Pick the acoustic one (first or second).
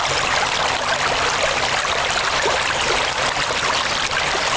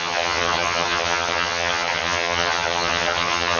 first